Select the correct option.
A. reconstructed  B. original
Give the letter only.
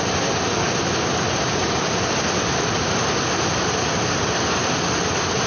B